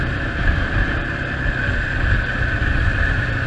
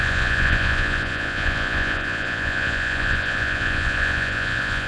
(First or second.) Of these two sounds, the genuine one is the first